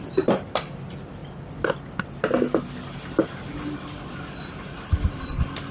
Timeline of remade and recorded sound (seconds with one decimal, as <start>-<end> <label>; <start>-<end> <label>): 0.0-5.7 recorded